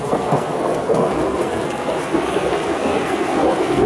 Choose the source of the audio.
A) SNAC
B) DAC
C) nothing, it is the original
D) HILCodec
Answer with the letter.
A